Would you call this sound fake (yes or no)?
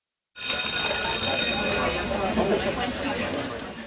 no